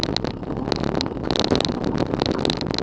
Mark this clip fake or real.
real